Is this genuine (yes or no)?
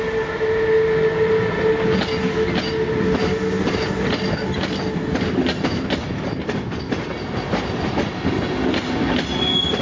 yes